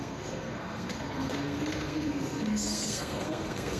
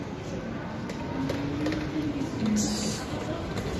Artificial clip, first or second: first